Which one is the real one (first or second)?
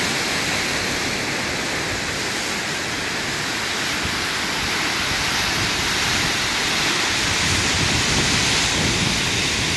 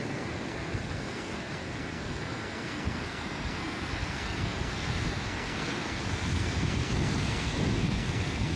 first